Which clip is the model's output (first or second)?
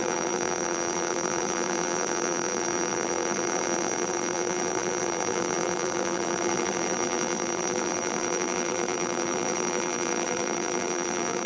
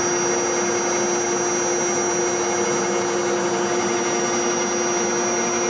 first